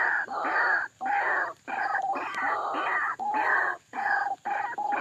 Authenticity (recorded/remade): recorded